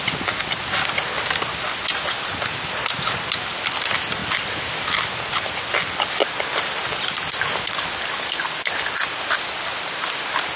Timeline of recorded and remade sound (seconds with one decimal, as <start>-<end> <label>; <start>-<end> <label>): 0.0-10.6 recorded